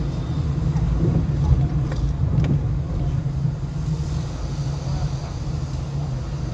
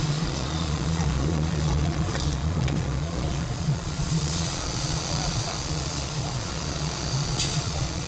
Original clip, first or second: first